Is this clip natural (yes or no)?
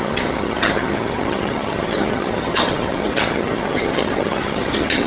no